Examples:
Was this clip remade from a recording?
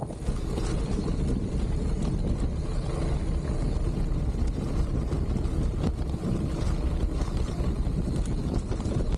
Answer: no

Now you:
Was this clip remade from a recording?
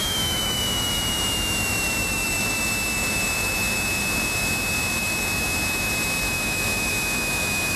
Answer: yes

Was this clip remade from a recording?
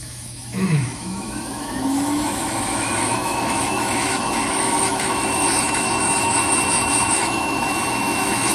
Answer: yes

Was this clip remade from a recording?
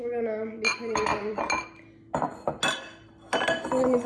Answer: no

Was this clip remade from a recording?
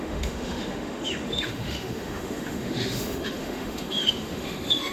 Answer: yes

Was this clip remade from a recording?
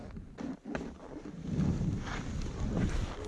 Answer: no